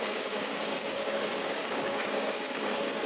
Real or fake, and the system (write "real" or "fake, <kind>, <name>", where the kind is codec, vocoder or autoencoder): fake, codec, DAC